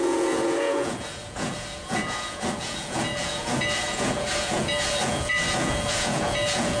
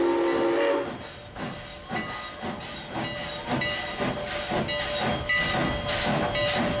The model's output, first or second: first